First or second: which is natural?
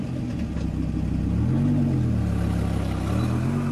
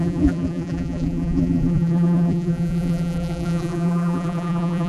first